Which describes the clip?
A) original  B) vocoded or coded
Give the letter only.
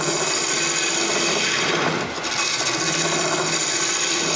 A